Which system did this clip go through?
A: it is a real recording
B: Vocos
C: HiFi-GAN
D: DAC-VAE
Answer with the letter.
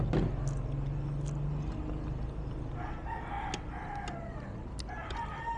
A